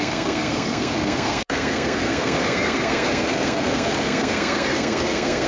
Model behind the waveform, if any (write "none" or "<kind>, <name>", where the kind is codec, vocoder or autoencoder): codec, SNAC